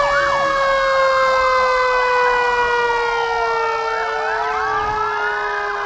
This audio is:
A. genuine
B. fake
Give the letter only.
A